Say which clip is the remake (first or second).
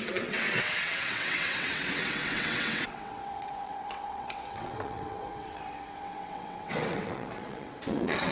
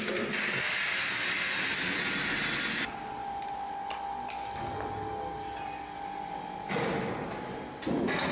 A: first